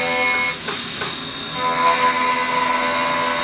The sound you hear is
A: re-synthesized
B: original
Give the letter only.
B